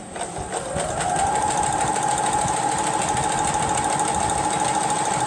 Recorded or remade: recorded